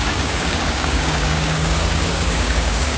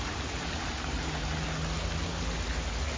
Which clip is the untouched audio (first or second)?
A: second